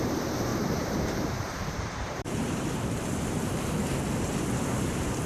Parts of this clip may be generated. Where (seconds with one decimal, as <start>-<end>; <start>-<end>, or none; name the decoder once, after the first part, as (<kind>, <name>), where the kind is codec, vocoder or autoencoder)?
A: 0.5-3.7 (vocoder, BigVGAN v2)

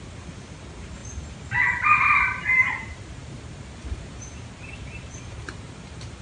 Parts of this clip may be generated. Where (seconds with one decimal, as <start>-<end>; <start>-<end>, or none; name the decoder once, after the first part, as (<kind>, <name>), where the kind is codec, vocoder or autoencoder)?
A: 0.0-1.0 (vocoder, BigVGAN v2); 2.0-6.2

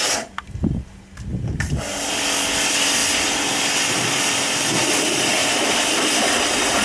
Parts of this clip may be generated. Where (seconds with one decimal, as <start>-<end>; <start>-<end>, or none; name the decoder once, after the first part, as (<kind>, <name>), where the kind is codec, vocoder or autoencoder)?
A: 1.3-1.9 (vocoder, BigVGAN v2); 5.4-6.1